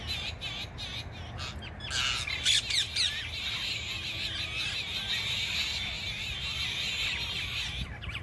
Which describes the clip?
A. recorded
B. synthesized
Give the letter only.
A